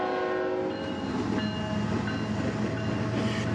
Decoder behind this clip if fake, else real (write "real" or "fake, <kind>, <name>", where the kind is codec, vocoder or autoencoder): real